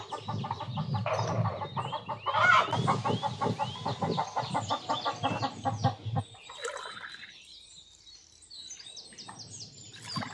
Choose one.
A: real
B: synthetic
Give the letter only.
A